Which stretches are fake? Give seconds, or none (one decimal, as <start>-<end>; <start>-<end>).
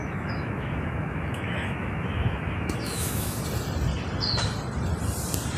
0.0-3.4